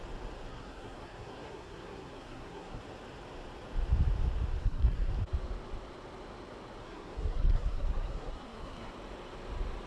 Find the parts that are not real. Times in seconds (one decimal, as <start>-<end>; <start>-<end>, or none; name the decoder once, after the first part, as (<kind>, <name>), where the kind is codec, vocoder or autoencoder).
0.5-2.8 (codec, SNAC); 4.6-5.1; 6.8-8.9